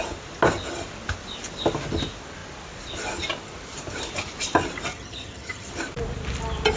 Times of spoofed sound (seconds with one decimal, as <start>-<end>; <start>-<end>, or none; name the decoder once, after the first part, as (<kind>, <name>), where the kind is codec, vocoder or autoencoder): 4.9-5.7 (vocoder, HiFi-GAN)